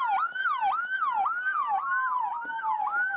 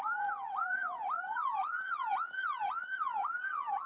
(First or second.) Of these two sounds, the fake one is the second